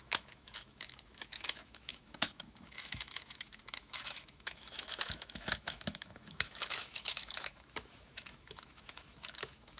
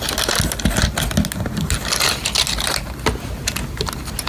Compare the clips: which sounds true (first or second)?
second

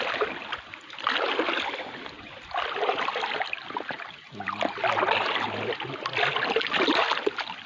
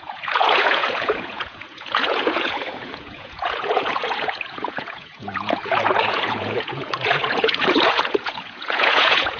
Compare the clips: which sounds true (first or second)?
first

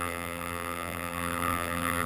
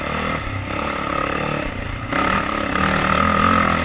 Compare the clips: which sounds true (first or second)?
second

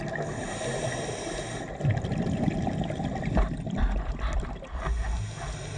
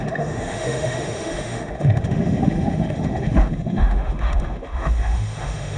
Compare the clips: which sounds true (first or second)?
first